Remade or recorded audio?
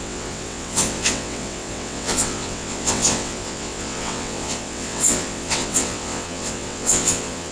remade